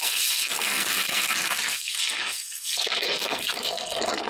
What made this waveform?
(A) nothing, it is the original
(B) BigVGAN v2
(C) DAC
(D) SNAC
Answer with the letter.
D